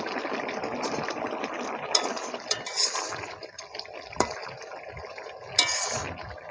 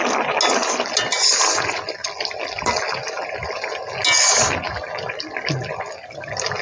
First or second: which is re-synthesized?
first